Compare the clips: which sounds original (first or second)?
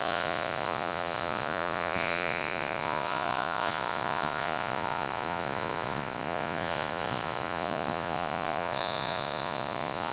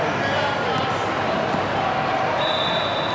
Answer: second